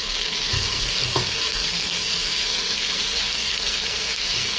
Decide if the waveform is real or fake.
fake